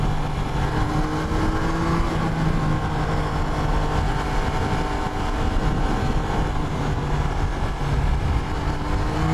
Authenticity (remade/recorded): recorded